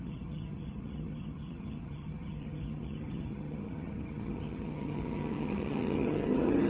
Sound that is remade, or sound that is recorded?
remade